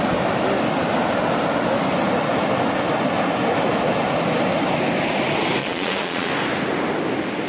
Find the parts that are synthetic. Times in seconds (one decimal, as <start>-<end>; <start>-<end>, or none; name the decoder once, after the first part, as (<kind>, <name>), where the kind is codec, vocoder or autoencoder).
5.6-6.3 (vocoder, Vocos)